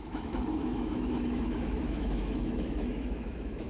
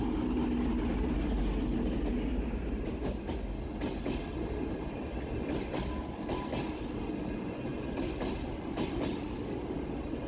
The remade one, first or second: first